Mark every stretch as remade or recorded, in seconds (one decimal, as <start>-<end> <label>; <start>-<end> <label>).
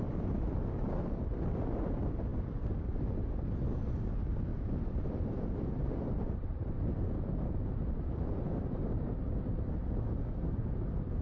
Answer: 0.0-4.5 recorded; 4.5-8.3 remade; 8.3-11.2 recorded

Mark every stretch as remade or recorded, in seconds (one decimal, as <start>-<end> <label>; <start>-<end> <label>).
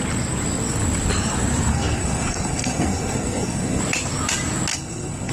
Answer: 0.0-1.7 recorded; 1.7-3.8 remade; 3.8-4.7 recorded; 4.7-5.3 remade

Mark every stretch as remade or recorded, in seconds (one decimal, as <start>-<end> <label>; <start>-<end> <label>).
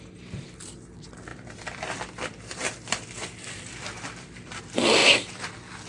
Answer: 0.0-1.3 recorded; 1.3-4.6 remade; 4.6-5.0 recorded; 5.0-5.5 remade; 5.5-5.9 recorded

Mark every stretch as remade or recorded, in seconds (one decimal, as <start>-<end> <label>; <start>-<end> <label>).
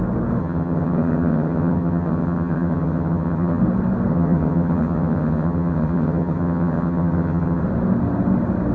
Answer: 0.0-0.4 recorded; 0.4-3.6 remade; 3.6-4.1 recorded; 4.1-7.6 remade; 7.6-8.7 recorded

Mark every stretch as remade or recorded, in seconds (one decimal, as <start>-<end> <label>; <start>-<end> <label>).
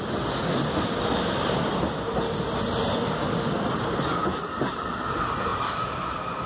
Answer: 0.0-4.3 recorded; 4.3-5.0 remade; 5.0-6.5 recorded